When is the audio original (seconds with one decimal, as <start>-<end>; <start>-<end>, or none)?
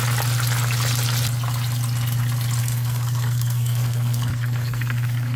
0.0-2.6